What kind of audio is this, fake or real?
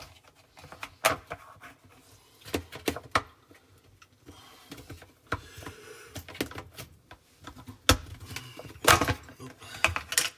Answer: real